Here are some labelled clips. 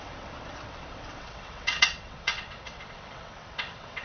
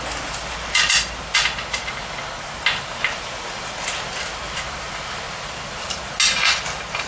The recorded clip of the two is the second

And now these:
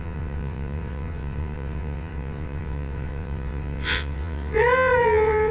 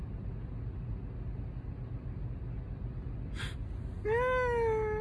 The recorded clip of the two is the second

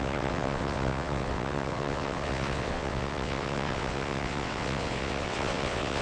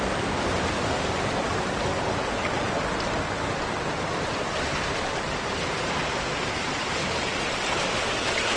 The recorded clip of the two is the second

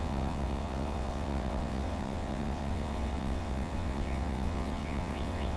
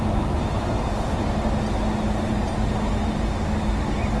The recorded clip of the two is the second